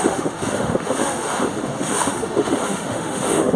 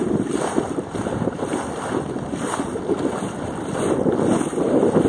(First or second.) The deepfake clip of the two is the first